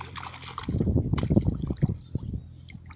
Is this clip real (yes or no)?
yes